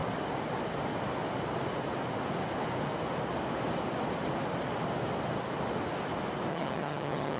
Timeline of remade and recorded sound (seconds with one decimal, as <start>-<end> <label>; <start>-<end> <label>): 0.0-6.5 recorded; 6.5-7.4 remade